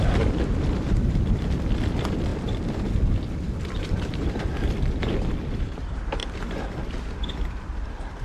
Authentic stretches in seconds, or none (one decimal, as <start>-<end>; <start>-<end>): 2.3-3.2